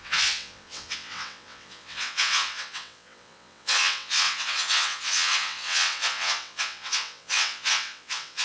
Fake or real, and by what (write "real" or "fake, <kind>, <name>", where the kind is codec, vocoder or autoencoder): fake, vocoder, WaveNeXt